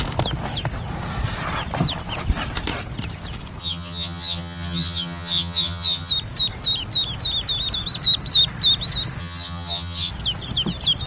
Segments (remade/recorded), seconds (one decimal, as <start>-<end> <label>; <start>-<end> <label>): 0.0-3.6 recorded; 3.6-6.1 remade; 6.1-9.2 recorded; 9.2-10.1 remade; 10.1-11.1 recorded